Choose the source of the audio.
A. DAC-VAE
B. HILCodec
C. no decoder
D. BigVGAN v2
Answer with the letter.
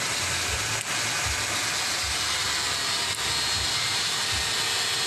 C